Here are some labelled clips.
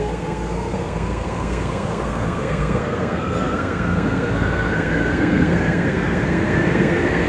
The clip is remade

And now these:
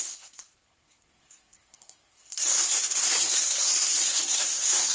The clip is remade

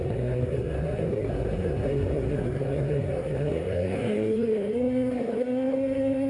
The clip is remade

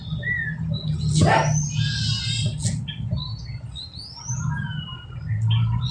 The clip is recorded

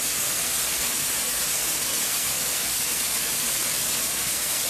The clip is remade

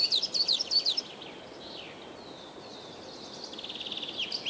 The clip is recorded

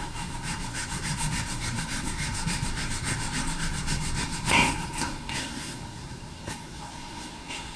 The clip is remade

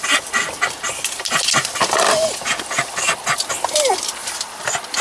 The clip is recorded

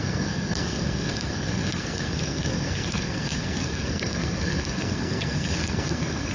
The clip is remade